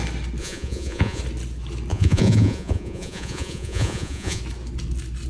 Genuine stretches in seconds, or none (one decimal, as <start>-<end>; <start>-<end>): 0.0-0.4; 1.2-1.9; 4.4-5.3

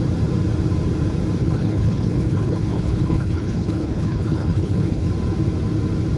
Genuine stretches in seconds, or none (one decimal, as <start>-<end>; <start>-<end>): 0.0-1.4; 5.1-6.2

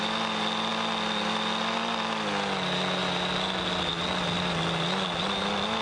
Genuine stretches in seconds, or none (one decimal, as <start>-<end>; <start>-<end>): 0.0-5.8